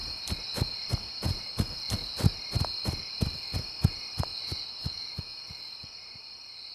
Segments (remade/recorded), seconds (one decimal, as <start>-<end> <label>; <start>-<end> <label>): 0.0-4.8 recorded; 4.8-5.4 remade; 5.4-6.7 recorded